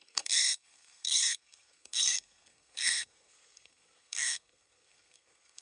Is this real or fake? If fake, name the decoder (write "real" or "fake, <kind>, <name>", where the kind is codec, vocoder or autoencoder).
fake, codec, SNAC